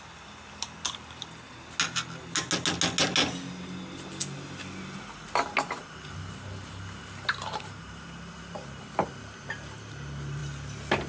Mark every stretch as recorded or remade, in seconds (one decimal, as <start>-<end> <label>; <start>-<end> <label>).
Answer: 0.0-11.1 recorded